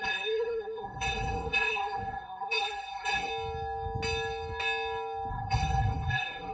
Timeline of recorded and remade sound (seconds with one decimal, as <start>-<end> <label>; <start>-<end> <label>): 0.0-3.3 remade; 3.3-5.3 recorded; 5.3-6.5 remade